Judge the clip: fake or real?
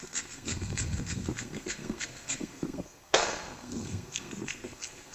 fake